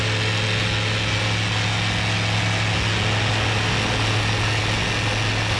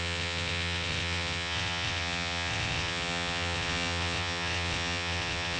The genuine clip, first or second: first